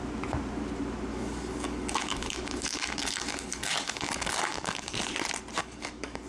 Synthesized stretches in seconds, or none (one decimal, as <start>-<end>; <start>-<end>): 1.1-4.9; 5.6-6.3